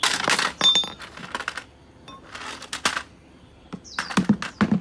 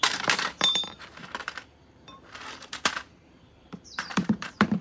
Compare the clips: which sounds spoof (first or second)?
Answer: second